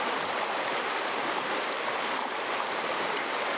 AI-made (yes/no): no